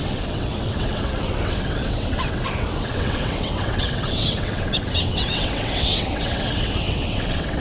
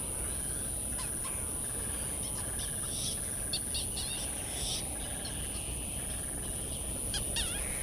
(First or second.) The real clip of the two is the second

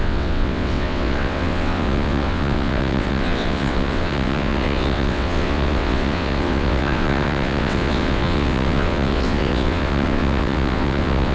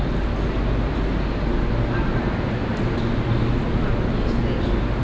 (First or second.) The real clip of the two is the second